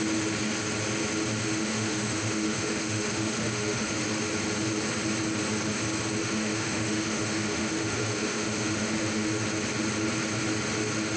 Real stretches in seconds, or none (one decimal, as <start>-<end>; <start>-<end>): 0.0-1.4; 3.9-6.2; 9.3-11.2